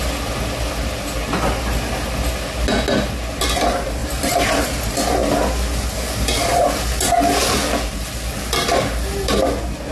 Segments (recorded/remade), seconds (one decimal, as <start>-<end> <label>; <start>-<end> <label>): 0.0-4.0 recorded; 4.0-4.8 remade; 4.8-9.9 recorded